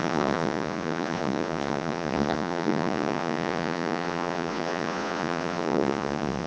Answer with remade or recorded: remade